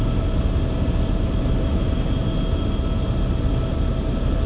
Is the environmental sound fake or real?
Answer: real